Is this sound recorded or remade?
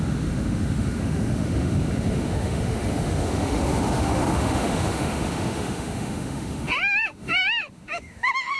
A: remade